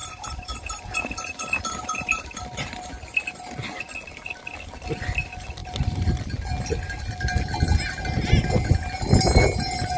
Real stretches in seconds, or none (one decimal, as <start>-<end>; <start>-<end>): 2.4-10.0